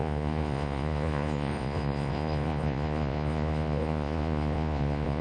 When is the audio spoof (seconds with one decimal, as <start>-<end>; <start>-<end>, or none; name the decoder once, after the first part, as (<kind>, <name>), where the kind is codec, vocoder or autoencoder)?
0.0-5.2 (vocoder, Vocos)